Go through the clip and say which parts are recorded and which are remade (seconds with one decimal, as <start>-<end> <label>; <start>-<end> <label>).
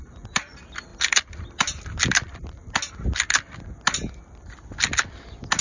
0.0-5.6 recorded